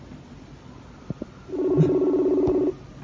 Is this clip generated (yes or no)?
no